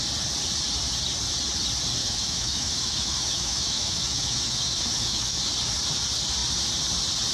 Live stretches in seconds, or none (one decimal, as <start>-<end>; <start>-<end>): 0.0-2.0; 5.4-7.3